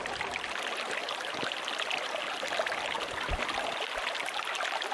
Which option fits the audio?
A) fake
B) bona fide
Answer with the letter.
B